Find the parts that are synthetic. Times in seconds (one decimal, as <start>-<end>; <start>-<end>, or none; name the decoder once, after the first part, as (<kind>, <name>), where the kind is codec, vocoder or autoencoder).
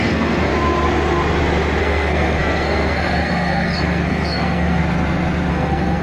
0.0-0.5 (codec, SNAC); 1.8-4.8; 5.5-6.0